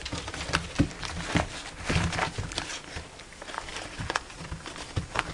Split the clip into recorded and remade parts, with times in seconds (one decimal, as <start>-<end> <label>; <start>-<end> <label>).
0.0-3.2 recorded; 3.2-5.3 remade